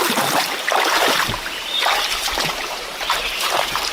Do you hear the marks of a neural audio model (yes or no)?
yes